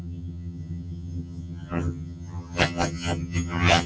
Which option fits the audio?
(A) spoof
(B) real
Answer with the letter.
A